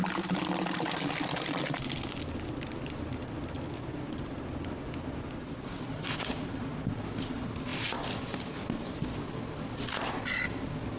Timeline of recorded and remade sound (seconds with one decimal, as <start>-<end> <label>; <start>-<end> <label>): 0.0-11.0 recorded